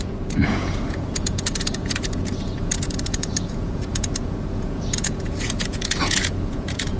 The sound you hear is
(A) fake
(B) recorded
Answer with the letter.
A